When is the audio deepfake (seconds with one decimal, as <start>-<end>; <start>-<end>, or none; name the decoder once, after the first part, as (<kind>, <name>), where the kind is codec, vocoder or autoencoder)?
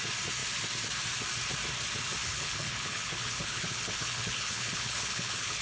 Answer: 2.2-5.6 (codec, HILCodec)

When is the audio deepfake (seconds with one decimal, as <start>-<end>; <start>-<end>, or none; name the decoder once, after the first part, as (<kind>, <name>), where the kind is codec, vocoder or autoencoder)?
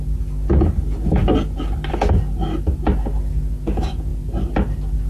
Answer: none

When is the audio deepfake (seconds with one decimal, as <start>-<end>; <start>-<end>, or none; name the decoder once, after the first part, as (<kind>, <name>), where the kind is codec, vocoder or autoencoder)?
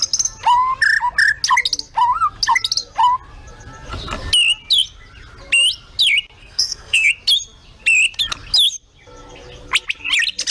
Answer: 6.4-7.1 (codec, SNAC)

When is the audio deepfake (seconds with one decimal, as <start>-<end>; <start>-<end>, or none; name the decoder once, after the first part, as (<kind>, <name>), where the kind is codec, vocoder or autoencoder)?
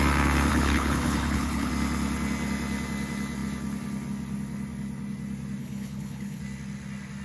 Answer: 0.5-1.7 (codec, HILCodec); 5.6-6.4